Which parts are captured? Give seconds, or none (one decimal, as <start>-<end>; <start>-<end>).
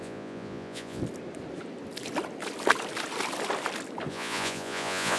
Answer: 1.0-4.1